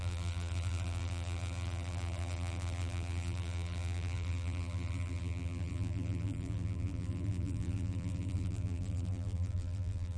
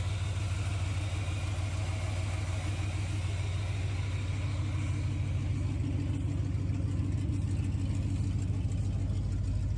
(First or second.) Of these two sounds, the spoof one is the first